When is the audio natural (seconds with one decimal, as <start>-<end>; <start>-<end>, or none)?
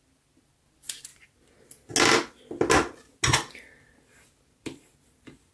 0.0-5.5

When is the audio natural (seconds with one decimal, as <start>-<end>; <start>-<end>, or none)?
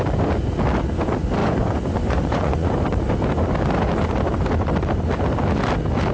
0.0-1.4; 2.7-6.1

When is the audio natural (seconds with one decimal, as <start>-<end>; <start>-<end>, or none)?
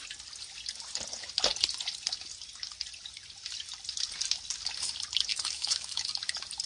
0.0-5.3; 6.1-6.7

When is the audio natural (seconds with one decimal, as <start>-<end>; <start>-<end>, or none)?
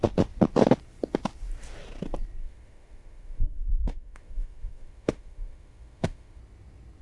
0.0-2.4; 6.4-7.0